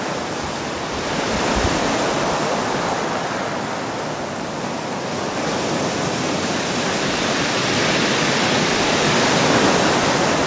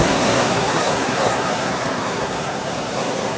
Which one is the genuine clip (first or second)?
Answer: first